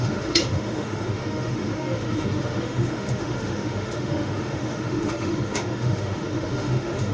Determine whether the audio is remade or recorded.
remade